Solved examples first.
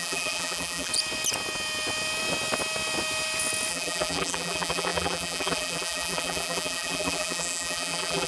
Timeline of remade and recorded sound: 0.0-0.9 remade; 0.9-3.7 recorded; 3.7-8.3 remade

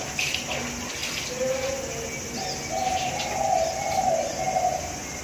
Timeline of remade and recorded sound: 0.0-5.2 recorded

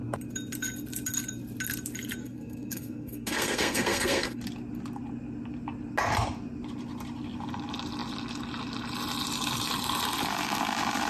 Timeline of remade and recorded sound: 0.0-2.2 recorded; 2.2-4.4 remade; 4.4-11.1 recorded

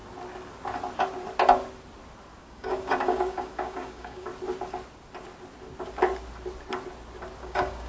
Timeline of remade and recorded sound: 0.0-2.4 recorded; 2.4-4.3 remade; 4.3-7.4 recorded; 7.4-7.9 remade

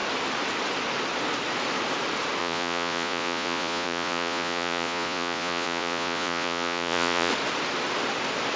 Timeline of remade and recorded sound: 0.0-2.4 recorded; 2.4-7.3 remade; 7.3-8.6 recorded

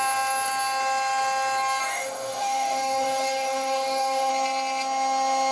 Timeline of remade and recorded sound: 0.0-1.8 recorded; 1.8-4.3 remade; 4.3-5.5 recorded